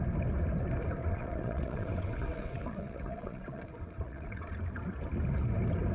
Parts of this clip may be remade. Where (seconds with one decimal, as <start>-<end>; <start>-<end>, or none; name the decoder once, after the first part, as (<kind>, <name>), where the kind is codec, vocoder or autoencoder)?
1.0-4.5 (vocoder, WaveNeXt)